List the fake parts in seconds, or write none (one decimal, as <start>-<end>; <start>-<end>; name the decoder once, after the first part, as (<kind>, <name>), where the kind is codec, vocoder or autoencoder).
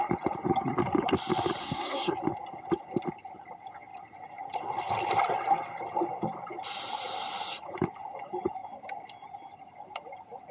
1.6-2.2 (codec, SNAC)